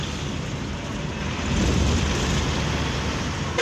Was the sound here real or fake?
real